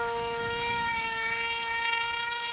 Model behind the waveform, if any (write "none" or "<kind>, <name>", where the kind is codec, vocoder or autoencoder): autoencoder, DAC-VAE